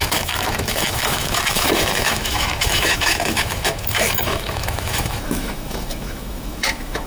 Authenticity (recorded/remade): remade